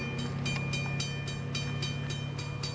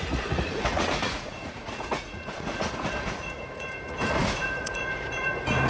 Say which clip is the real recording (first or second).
first